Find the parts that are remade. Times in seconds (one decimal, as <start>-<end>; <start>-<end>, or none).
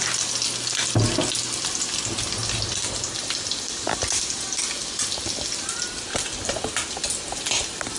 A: none